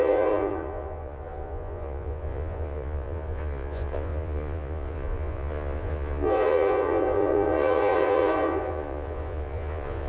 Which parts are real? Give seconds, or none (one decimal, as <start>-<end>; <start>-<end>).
none